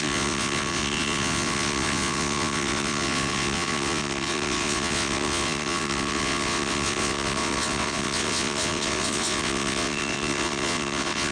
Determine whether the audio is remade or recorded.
remade